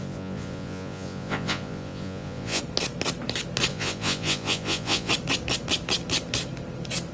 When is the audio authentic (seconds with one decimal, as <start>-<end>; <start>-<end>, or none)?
2.6-3.7; 5.1-7.1